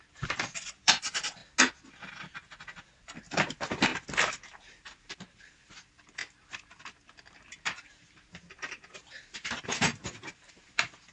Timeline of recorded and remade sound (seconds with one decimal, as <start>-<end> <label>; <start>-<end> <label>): 0.0-1.4 remade; 1.4-3.3 recorded; 3.3-3.9 remade; 3.9-4.6 recorded; 4.6-11.1 remade